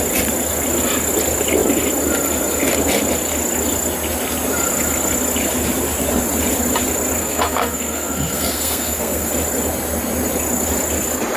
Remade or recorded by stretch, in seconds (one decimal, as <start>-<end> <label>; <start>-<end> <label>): 0.0-7.2 recorded; 7.2-9.3 remade; 9.3-11.4 recorded